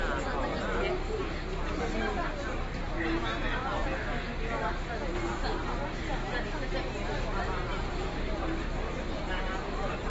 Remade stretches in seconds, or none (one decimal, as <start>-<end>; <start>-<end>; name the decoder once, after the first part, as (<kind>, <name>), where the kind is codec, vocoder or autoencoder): 7.7-9.2 (vocoder, BigVGAN v2)